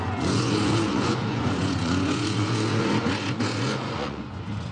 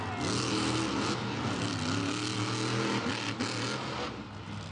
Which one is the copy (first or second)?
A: first